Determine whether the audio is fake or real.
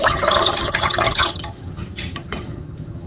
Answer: fake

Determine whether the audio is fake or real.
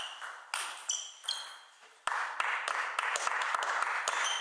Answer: real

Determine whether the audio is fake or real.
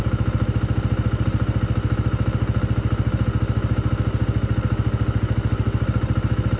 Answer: real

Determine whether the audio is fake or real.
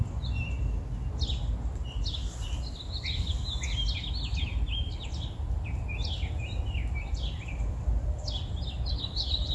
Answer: real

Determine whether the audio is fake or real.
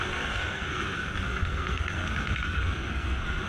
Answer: fake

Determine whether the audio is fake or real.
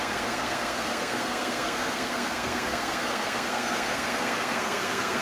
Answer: fake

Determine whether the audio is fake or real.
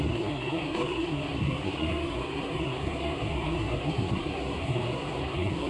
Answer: fake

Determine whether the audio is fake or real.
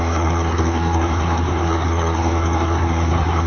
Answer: fake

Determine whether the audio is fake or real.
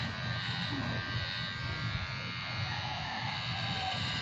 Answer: fake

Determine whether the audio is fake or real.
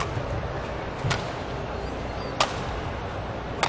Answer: real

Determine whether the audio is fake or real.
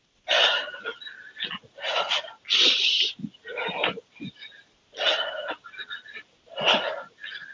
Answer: real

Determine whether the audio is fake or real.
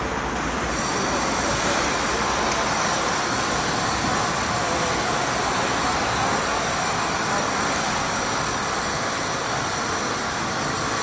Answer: real